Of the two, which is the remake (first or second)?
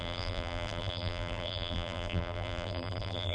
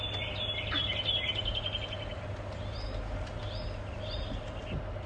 first